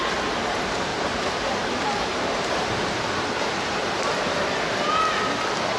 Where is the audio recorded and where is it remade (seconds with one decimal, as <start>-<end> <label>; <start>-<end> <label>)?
0.0-0.9 recorded; 0.9-4.4 remade; 4.4-5.8 recorded